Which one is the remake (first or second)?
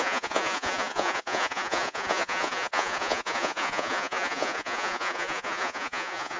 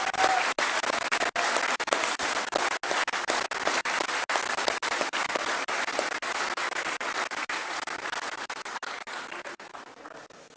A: first